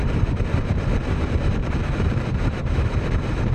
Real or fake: fake